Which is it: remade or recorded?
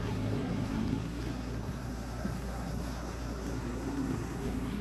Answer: remade